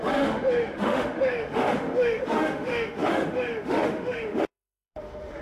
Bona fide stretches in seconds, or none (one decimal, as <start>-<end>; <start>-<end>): none